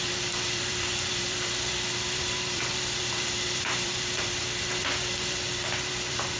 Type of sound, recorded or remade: remade